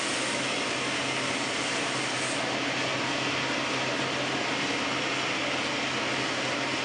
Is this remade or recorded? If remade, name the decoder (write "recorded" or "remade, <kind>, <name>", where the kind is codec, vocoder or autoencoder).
recorded